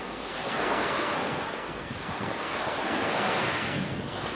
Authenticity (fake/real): fake